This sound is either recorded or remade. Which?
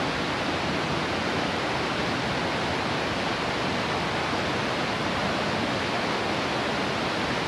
recorded